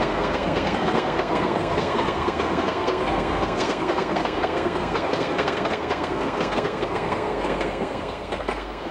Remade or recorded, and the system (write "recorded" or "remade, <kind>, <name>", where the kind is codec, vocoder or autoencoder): remade, codec, SNAC